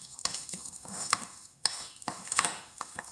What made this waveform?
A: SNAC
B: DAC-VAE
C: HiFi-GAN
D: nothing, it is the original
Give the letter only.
B